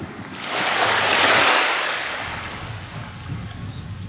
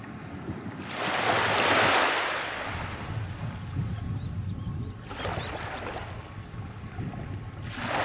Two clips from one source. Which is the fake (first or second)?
first